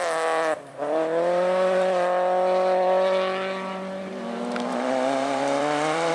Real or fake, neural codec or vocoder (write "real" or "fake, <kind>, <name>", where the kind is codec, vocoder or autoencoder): fake, vocoder, BigVGAN v2